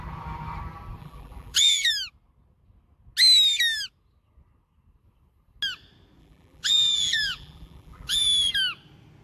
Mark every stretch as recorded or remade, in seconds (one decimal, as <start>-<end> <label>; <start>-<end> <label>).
0.0-1.0 recorded; 1.0-1.9 remade; 1.9-6.2 recorded; 6.2-8.5 remade; 8.5-9.2 recorded